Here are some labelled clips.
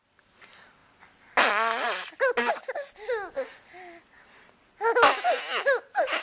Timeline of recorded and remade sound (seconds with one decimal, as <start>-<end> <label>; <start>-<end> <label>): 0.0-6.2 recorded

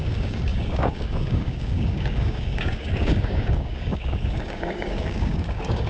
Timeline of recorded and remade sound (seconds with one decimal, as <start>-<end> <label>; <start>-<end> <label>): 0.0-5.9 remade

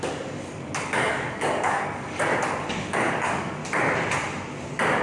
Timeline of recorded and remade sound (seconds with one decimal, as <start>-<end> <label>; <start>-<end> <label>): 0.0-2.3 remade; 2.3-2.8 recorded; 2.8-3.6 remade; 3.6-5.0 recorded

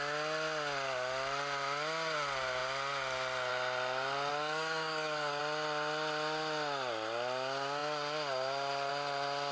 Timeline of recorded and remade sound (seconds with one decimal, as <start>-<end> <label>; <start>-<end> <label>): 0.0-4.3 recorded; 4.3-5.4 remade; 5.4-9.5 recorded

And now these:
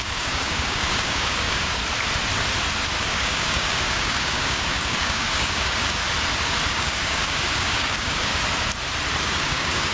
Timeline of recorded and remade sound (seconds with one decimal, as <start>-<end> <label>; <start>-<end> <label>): 0.0-1.8 remade; 1.8-3.0 recorded; 3.0-6.0 remade; 6.0-6.7 recorded; 6.7-8.3 remade; 8.3-9.2 recorded; 9.2-9.9 remade